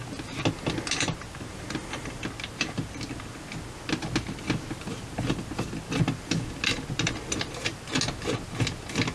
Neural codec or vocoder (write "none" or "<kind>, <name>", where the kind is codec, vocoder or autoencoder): none